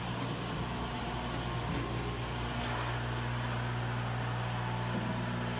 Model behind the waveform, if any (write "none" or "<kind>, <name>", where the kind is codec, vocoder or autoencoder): none